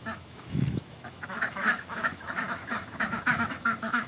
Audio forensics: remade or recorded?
remade